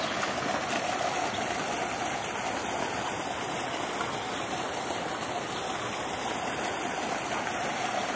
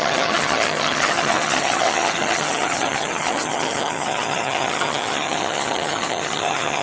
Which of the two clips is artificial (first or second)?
second